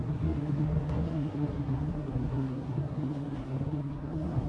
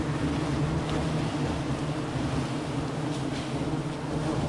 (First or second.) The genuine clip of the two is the second